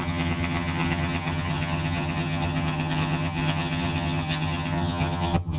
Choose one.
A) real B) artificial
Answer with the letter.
B